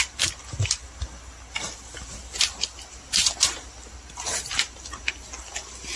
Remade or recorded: recorded